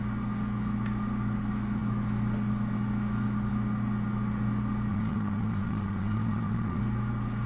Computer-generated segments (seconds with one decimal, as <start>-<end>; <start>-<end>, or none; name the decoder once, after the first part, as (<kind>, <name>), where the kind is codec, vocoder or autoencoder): 4.9-6.8 (vocoder, Vocos)